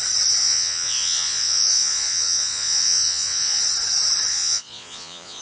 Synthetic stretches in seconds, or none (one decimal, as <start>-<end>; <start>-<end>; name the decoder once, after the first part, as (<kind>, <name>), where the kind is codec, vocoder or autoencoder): 0.4-3.6 (vocoder, Vocos); 4.3-5.4